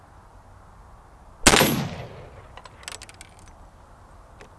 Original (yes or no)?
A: yes